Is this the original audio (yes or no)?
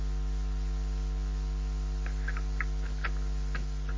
yes